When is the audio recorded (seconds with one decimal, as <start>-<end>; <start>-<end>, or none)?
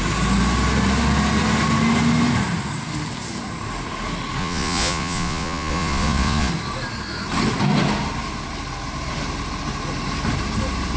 0.0-4.4; 6.5-11.0